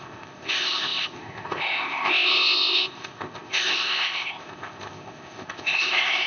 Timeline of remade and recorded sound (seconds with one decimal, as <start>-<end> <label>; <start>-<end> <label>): 0.0-6.3 remade